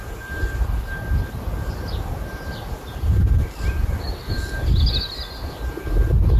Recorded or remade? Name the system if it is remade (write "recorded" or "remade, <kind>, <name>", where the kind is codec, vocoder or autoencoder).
recorded